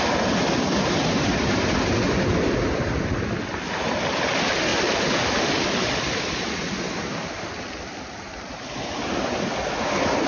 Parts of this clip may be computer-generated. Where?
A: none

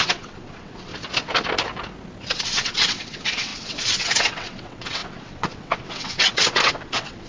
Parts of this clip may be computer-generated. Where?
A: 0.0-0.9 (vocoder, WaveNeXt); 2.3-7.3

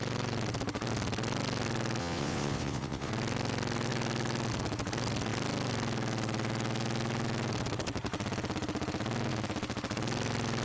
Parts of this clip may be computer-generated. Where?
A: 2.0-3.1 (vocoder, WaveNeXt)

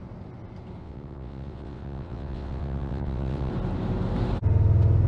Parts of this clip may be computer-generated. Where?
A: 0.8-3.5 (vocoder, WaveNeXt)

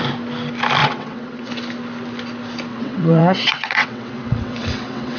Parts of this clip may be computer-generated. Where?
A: 0.8-1.5 (vocoder, WaveNeXt); 2.7-5.2